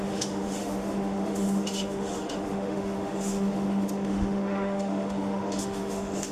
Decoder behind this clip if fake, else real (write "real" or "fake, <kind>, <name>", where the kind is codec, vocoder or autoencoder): fake, autoencoder, DAC-VAE